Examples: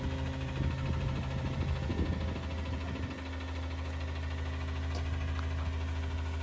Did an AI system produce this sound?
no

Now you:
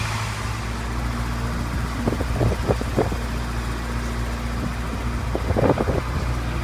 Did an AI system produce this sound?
no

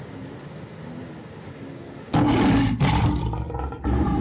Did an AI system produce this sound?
no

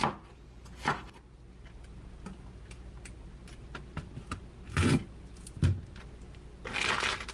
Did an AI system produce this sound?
no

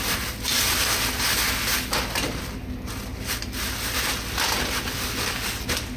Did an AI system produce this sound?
no